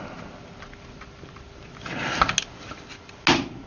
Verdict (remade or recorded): recorded